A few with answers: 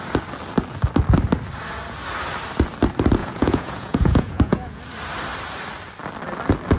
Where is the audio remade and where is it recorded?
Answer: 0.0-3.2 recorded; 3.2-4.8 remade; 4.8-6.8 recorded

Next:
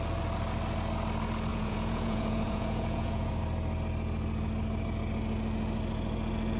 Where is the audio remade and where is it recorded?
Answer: 0.0-1.5 recorded; 1.5-3.3 remade; 3.3-6.6 recorded

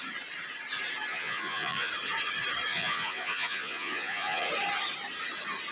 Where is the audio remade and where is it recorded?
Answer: 0.0-1.1 recorded; 1.1-1.9 remade; 1.9-2.7 recorded; 2.7-4.5 remade; 4.5-5.7 recorded

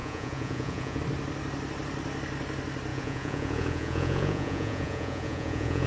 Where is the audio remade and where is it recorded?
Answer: 0.0-1.0 remade; 1.0-2.9 recorded; 2.9-5.9 remade

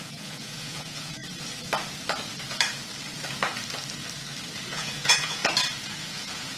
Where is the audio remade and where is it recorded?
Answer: 0.0-1.2 remade; 1.2-4.7 recorded; 4.7-5.4 remade; 5.4-6.0 recorded; 6.0-6.6 remade

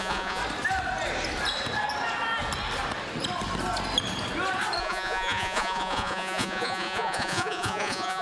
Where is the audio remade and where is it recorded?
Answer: 0.0-0.4 remade; 0.4-4.8 recorded; 4.8-8.2 remade

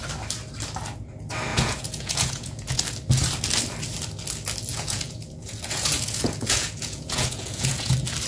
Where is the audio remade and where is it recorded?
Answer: 0.0-1.5 recorded; 1.5-2.8 remade; 2.8-4.7 recorded; 4.7-7.9 remade; 7.9-8.3 recorded

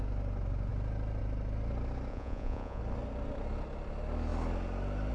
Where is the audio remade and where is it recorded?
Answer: 0.0-2.1 recorded; 2.1-2.8 remade; 2.8-5.1 recorded